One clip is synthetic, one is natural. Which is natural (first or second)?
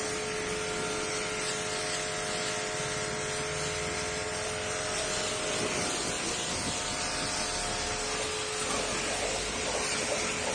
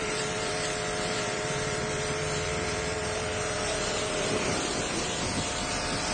first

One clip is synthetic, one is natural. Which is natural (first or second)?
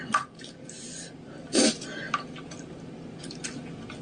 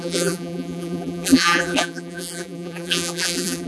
first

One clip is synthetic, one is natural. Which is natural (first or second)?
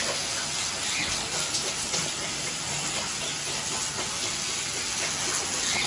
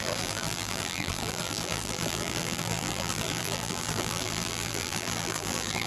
first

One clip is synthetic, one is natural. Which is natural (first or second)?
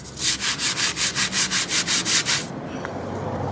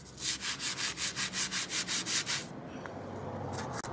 second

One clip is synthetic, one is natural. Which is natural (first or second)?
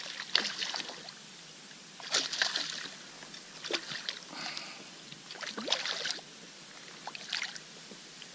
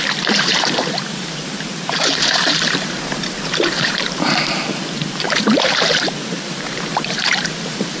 first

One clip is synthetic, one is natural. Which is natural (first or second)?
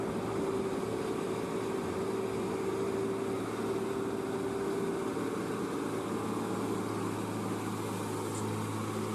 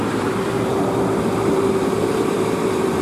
first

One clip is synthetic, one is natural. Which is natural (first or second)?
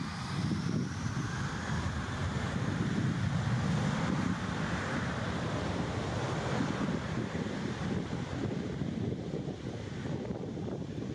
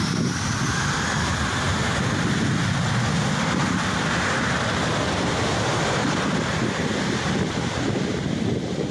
second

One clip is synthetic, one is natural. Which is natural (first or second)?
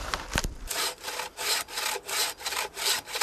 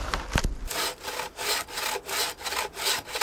second